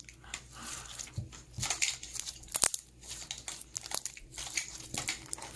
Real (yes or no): yes